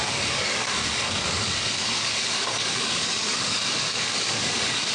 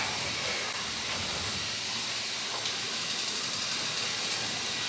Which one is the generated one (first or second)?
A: first